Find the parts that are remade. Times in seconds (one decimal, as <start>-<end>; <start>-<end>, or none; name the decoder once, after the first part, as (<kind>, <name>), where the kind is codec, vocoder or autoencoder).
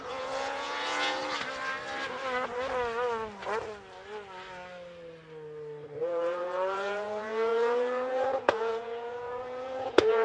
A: 0.0-1.2 (vocoder, Vocos); 6.0-10.2